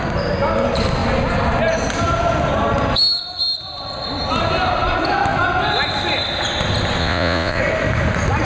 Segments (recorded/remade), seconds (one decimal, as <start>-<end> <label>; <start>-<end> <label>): 0.0-7.0 recorded; 7.0-7.6 remade; 7.6-8.4 recorded